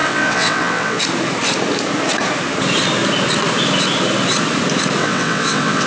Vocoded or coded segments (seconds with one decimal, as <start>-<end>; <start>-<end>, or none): 0.0-1.0; 5.0-5.9